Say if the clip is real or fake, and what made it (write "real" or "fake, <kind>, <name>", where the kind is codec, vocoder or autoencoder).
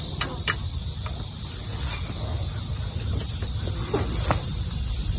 fake, vocoder, BigVGAN v2